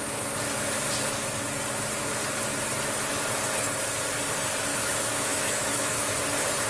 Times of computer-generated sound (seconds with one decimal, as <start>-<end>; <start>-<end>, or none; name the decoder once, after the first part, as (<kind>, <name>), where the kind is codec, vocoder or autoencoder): 4.7-6.2 (autoencoder, DAC-VAE)